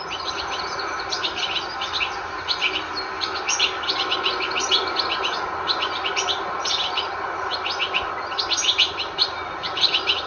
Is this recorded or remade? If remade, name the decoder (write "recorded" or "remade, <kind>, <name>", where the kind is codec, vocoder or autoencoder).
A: recorded